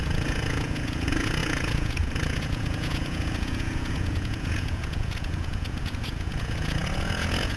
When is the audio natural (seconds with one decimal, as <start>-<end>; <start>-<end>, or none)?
none